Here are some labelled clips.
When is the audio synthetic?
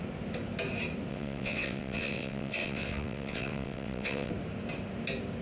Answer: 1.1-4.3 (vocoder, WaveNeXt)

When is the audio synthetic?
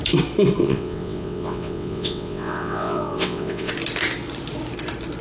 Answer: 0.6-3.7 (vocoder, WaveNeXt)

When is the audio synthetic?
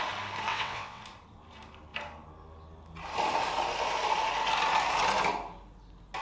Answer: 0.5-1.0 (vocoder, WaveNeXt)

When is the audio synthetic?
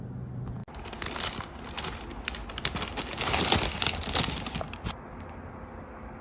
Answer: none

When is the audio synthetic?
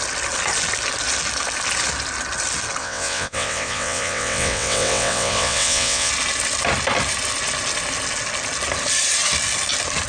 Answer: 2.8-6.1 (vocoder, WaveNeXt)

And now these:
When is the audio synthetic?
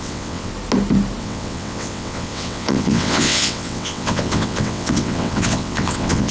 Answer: 0.0-0.5 (vocoder, WaveNeXt); 1.2-6.3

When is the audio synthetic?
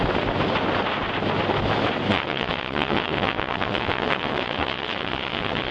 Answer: 2.1-5.7 (vocoder, WaveNeXt)